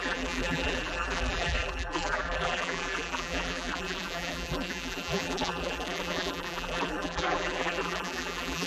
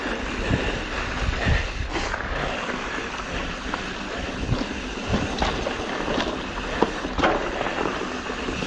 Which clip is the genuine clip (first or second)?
second